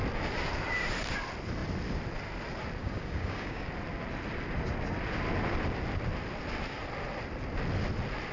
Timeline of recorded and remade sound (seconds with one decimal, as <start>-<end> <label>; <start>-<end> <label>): 0.0-2.8 recorded; 2.8-3.7 remade; 3.7-8.3 recorded